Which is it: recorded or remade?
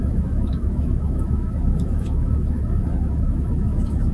remade